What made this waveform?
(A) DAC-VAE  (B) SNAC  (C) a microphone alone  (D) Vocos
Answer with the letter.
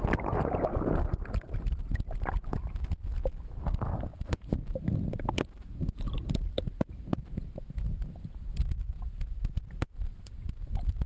C